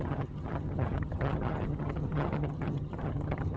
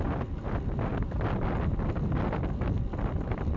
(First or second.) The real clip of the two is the second